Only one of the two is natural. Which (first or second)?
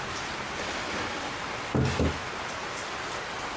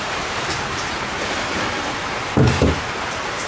first